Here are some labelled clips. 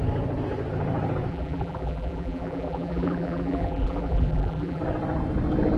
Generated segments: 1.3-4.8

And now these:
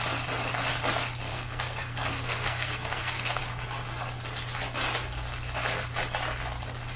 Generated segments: 1.3-3.4

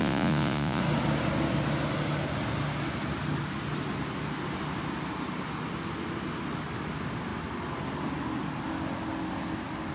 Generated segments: 0.0-0.8

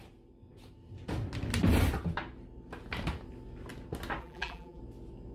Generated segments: 4.2-4.8

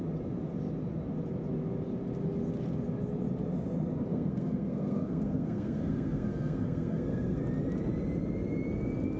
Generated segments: 4.1-7.4